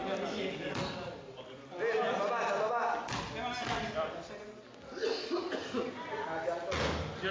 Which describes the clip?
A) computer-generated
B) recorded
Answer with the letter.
B